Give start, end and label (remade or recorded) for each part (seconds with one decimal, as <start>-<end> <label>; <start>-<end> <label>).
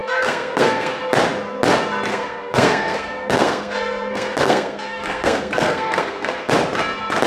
0.0-1.0 remade; 1.0-2.1 recorded; 2.1-6.5 remade; 6.5-7.3 recorded